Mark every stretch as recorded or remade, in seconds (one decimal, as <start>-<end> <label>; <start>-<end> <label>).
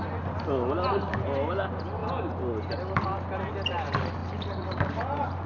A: 0.0-5.5 remade